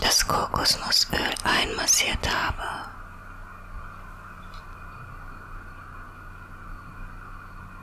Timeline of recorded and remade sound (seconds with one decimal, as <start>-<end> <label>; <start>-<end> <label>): 0.0-7.8 recorded